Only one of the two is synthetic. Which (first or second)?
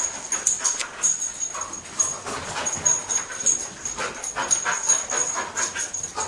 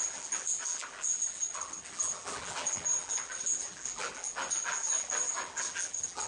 second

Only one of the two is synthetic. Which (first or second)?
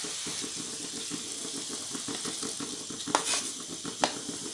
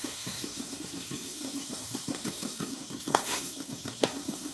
second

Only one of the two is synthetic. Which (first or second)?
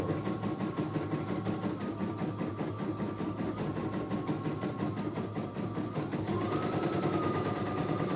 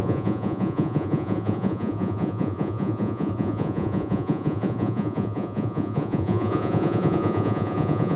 second